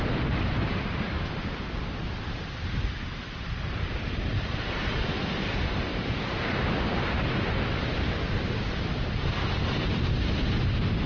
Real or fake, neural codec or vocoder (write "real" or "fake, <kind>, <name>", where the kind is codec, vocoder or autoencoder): fake, vocoder, BigVGAN v2